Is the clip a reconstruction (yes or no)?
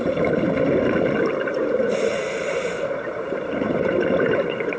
yes